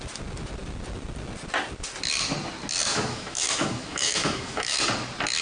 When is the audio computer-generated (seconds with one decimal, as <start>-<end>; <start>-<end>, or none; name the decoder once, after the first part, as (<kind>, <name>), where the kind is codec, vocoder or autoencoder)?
2.9-4.8 (autoencoder, DAC-VAE)